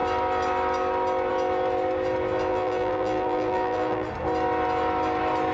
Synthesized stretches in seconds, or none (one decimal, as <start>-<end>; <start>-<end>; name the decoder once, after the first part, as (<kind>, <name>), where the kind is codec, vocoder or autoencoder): 2.5-4.1 (vocoder, BigVGAN v2)